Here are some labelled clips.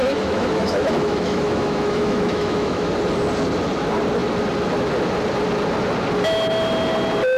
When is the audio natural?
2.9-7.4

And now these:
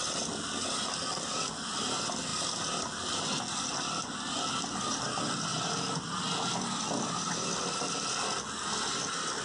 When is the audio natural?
0.0-9.4